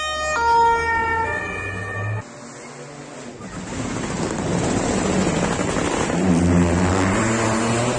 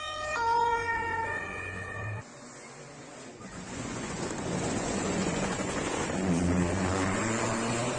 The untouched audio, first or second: first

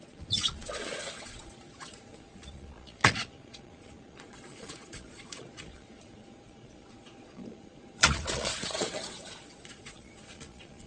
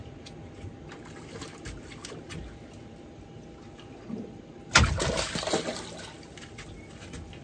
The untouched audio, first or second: second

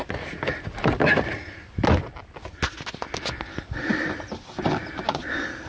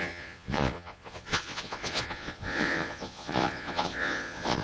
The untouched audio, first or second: first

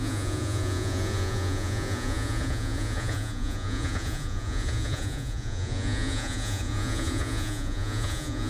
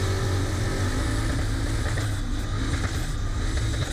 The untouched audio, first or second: second